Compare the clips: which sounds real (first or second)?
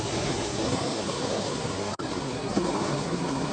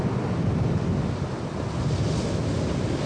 second